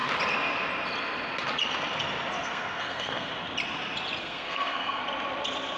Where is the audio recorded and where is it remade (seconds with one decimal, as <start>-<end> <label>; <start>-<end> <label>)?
0.0-2.4 recorded; 2.4-3.3 remade; 3.3-4.2 recorded; 4.2-5.0 remade; 5.0-5.8 recorded